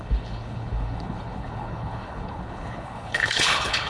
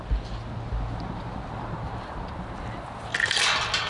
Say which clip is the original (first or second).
second